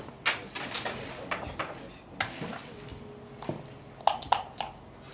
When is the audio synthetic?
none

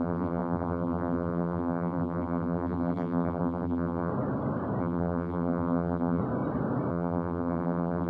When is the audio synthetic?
0.0-4.1 (vocoder, BigVGAN v2); 4.8-6.2; 6.9-8.1

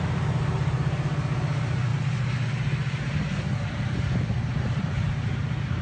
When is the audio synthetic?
0.0-5.8 (vocoder, BigVGAN v2)

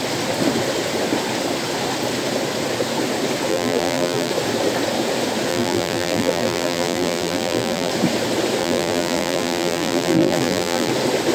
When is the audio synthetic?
3.5-4.3 (vocoder, BigVGAN v2); 5.5-7.9; 8.6-10.9

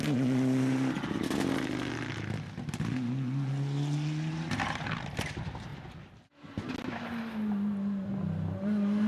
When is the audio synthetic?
none